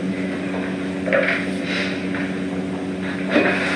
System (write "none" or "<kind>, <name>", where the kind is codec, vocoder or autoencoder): none